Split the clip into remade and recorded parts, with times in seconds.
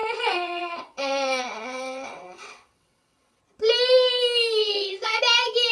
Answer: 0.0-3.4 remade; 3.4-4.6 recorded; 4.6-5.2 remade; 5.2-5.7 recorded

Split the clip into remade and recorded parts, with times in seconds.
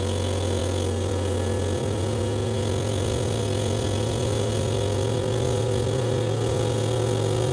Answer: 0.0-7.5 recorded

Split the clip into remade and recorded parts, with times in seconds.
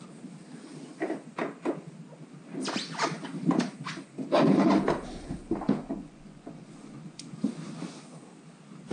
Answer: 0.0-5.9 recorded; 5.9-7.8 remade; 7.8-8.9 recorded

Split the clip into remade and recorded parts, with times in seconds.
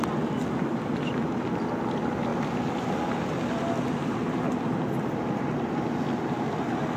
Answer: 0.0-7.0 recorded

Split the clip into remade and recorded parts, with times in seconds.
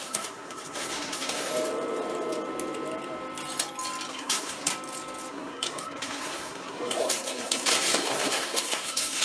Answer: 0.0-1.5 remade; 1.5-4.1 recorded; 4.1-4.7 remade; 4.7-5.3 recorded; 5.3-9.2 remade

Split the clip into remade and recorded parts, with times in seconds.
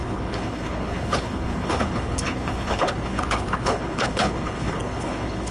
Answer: 0.0-5.5 remade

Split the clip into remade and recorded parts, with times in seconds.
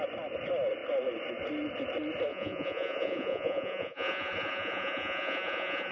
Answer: 0.0-2.3 recorded; 2.3-5.9 remade